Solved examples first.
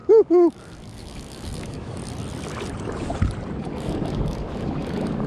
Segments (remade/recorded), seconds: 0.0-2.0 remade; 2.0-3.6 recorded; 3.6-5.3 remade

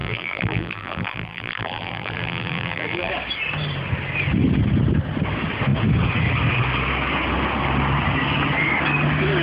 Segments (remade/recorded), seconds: 0.0-3.1 remade; 3.1-9.4 recorded

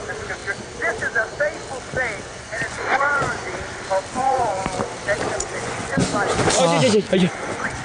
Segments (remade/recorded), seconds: 0.0-0.4 remade; 0.4-2.2 recorded; 2.2-3.6 remade; 3.6-4.1 recorded; 4.1-4.6 remade; 4.6-5.3 recorded; 5.3-6.1 remade; 6.1-7.1 recorded; 7.1-7.8 remade

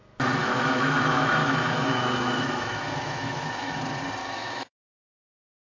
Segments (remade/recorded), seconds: 0.0-0.4 recorded; 0.4-3.8 remade; 3.8-4.2 recorded; 4.2-4.9 remade; 4.9-5.7 recorded

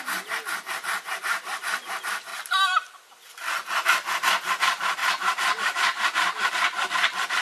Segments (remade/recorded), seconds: 0.0-2.3 recorded; 2.3-3.1 remade; 3.1-5.0 recorded; 5.0-6.5 remade; 6.5-7.4 recorded

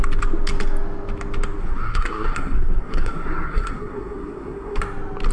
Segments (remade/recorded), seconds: 0.0-1.6 recorded; 1.6-4.8 remade; 4.8-5.3 recorded

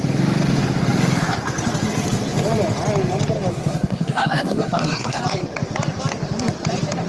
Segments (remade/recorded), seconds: 0.0-3.5 recorded; 3.5-5.2 remade; 5.2-7.1 recorded

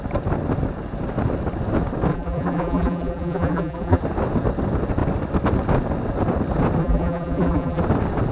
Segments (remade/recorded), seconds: 0.0-2.1 recorded; 2.1-4.0 remade; 4.0-6.8 recorded; 6.8-7.8 remade; 7.8-8.3 recorded